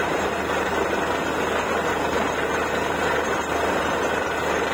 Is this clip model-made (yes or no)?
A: no